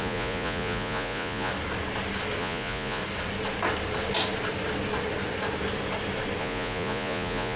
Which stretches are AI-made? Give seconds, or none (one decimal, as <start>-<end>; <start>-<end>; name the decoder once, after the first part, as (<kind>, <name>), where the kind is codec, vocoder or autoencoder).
0.0-1.5 (vocoder, Vocos); 2.4-3.0; 6.4-7.6